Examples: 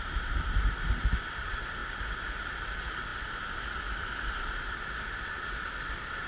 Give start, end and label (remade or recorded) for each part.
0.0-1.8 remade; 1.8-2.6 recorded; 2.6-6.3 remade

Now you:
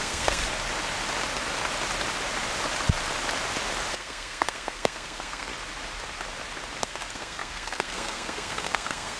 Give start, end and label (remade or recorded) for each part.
0.0-0.4 remade; 0.4-3.9 recorded; 3.9-5.5 remade; 5.5-6.8 recorded; 6.8-9.2 remade

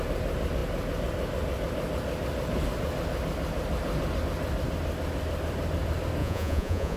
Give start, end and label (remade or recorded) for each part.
0.0-6.2 recorded; 6.2-7.0 remade

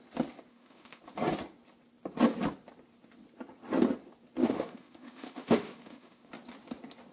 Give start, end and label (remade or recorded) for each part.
0.0-0.5 recorded; 0.5-1.0 remade; 1.0-4.4 recorded; 4.4-6.3 remade; 6.3-7.1 recorded

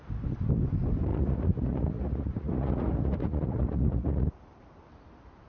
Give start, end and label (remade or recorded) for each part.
0.0-1.1 recorded; 1.1-4.4 remade; 4.4-5.5 recorded

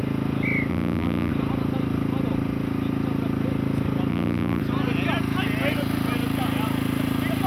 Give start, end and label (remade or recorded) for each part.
0.0-0.7 recorded; 0.7-1.3 remade; 1.3-4.1 recorded; 4.1-4.6 remade; 4.6-7.5 recorded